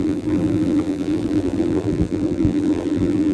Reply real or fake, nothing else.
fake